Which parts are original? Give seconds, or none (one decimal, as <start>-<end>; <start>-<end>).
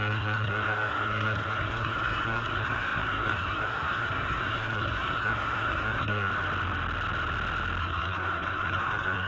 6.3-7.8